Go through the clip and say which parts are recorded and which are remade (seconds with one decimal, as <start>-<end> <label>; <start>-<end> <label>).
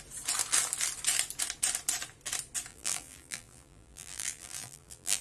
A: 0.0-2.7 recorded; 2.7-5.2 remade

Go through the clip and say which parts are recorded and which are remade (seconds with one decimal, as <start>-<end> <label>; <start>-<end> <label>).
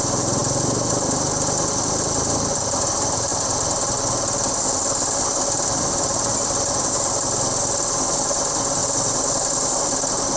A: 0.0-10.4 recorded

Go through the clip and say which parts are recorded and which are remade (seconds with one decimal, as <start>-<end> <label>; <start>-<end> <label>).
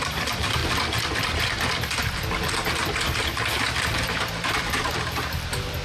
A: 0.0-0.6 remade; 0.6-3.8 recorded; 3.8-5.8 remade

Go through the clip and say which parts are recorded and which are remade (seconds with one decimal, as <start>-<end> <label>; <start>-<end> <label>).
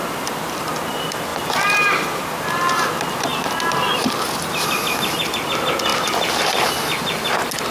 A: 0.0-7.7 recorded